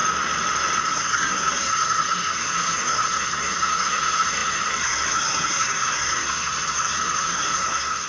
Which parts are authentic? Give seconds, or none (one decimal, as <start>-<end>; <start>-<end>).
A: 0.0-0.8